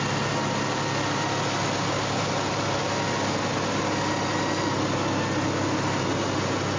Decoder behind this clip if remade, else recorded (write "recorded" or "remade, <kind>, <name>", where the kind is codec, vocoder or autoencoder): recorded